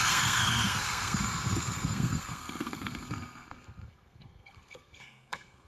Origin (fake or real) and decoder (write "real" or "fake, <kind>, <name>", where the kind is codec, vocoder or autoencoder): fake, codec, SNAC